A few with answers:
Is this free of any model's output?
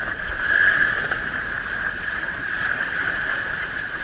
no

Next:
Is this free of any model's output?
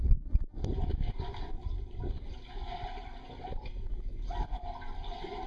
yes